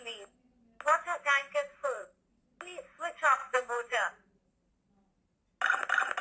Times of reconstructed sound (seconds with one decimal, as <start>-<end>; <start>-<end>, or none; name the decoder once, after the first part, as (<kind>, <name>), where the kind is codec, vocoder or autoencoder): 1.4-2.3 (vocoder, BigVGAN v2); 3.4-5.5